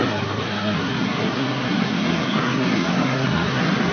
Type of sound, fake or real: fake